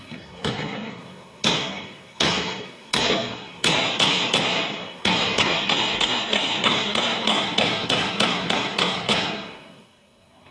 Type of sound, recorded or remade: remade